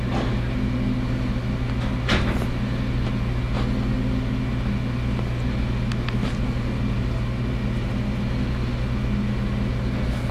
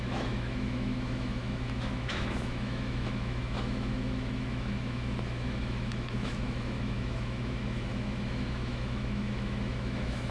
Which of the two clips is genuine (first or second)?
first